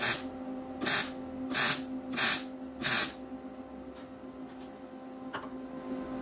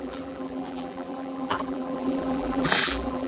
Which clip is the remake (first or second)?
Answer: second